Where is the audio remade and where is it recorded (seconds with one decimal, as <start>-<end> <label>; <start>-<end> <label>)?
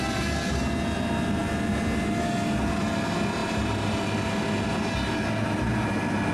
0.0-3.4 recorded; 3.4-4.0 remade; 4.0-6.3 recorded